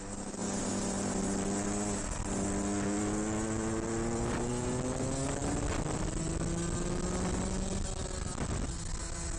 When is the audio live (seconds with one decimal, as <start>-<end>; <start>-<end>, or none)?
0.0-9.4